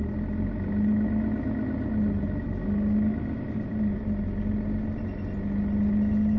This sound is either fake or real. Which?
real